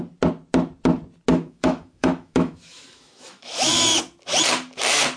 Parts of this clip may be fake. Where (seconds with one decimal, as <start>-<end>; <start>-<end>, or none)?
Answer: 1.3-4.0